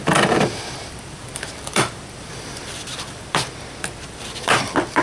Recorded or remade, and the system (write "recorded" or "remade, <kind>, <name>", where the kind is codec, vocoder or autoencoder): remade, vocoder, BigVGAN v2